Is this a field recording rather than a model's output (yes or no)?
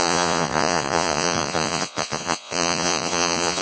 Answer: no